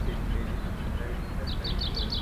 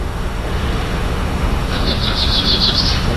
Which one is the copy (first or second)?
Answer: second